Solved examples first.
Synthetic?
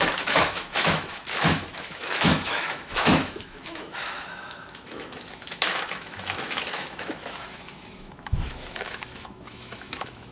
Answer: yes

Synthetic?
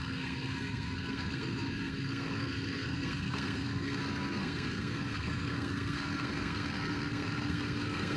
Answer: yes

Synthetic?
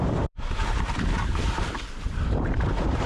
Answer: yes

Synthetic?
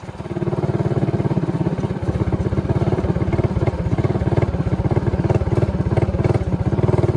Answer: no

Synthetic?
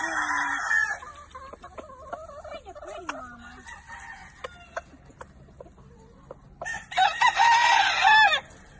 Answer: no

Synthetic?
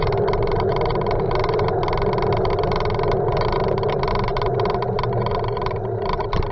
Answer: no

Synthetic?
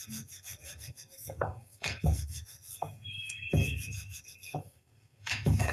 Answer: yes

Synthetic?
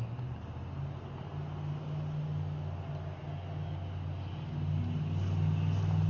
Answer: no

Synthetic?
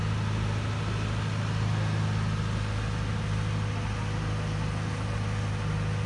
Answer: no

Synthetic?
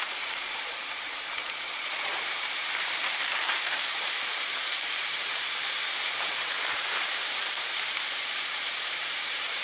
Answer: yes